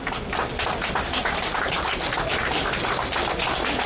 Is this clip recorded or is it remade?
recorded